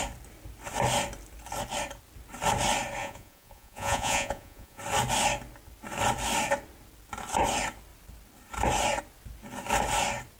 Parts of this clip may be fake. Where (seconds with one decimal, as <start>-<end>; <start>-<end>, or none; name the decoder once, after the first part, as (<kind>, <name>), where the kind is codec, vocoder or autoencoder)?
3.0-4.8 (vocoder, Vocos)